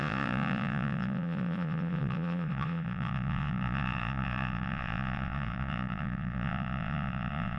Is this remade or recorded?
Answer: remade